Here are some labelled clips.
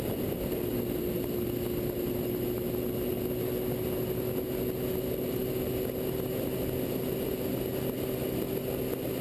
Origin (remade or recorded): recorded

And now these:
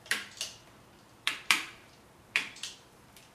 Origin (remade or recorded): remade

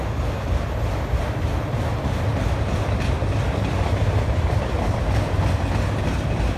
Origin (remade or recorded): recorded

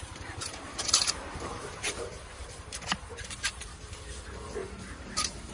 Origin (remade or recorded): remade